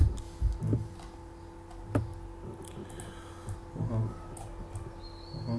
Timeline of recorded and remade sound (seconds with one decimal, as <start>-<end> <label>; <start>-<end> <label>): 0.0-5.6 recorded